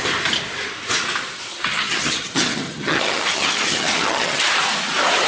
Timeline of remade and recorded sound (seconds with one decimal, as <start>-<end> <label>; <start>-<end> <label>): 0.0-1.5 recorded; 1.5-4.4 remade; 4.4-5.3 recorded